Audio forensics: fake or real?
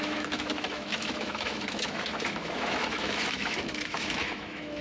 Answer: fake